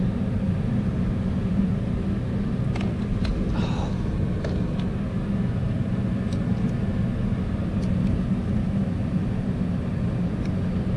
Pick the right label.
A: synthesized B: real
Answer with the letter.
B